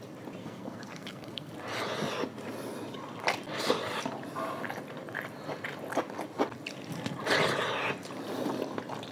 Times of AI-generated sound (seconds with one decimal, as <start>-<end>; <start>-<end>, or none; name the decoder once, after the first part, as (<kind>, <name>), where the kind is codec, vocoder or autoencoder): 0.4-1.5 (codec, SNAC)